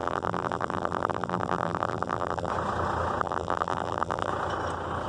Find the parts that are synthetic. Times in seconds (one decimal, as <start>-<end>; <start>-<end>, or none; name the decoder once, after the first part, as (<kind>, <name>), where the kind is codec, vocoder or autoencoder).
0.0-2.5 (vocoder, BigVGAN v2); 3.2-4.3

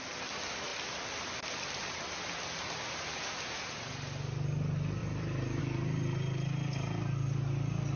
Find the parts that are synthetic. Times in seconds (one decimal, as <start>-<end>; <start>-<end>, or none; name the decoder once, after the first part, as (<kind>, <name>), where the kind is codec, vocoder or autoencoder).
0.7-1.5 (vocoder, BigVGAN v2); 5.0-5.6